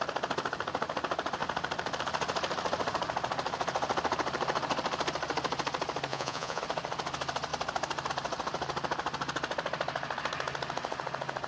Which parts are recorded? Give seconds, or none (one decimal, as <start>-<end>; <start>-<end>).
0.0-6.1; 6.6-11.5